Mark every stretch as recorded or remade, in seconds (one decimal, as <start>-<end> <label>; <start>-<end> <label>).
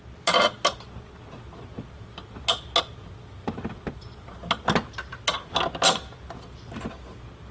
0.0-7.5 recorded